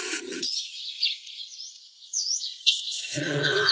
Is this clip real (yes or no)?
no